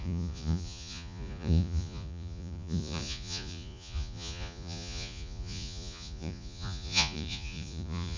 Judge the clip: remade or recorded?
remade